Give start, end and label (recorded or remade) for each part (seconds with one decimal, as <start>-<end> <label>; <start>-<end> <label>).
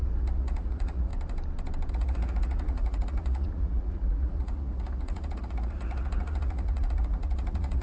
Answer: 0.0-1.1 remade; 1.1-1.9 recorded; 1.9-7.8 remade